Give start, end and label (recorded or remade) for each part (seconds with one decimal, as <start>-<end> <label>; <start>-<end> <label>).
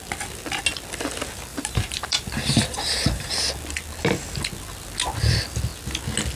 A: 0.0-1.5 recorded; 1.5-3.3 remade; 3.3-6.4 recorded